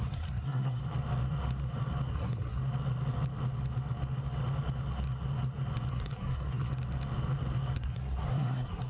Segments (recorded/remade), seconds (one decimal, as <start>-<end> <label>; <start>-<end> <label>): 0.0-0.8 remade; 0.8-2.1 recorded; 2.1-2.6 remade; 2.6-5.9 recorded; 5.9-6.7 remade; 6.7-7.8 recorded; 7.8-8.9 remade